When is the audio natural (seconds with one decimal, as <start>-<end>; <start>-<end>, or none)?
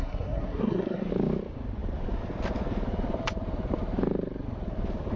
1.1-5.2